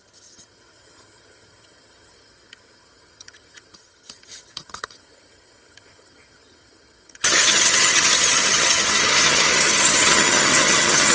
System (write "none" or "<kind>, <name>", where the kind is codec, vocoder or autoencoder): vocoder, HiFi-GAN